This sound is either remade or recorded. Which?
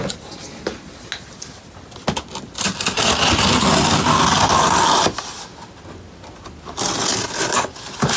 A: recorded